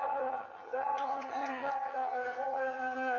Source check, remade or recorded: remade